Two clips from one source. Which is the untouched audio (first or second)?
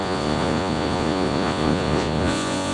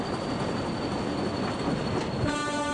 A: second